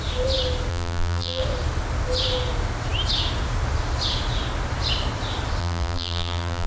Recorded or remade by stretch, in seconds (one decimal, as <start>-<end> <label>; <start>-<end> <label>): 0.0-0.7 recorded; 0.7-1.4 remade; 1.4-5.6 recorded; 5.6-6.7 remade